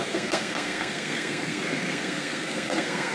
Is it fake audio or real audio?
fake